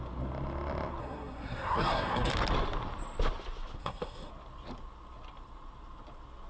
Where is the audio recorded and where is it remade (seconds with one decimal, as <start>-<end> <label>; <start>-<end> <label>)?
0.0-1.0 recorded; 1.0-2.3 remade; 2.3-3.8 recorded; 3.8-4.3 remade; 4.3-6.5 recorded